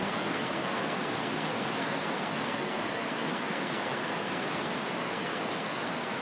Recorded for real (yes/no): no